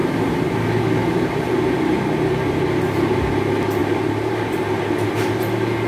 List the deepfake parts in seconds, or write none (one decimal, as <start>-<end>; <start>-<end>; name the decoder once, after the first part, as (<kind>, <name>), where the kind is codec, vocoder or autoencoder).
0.0-0.5 (vocoder, BigVGAN v2); 1.0-2.8; 3.8-4.6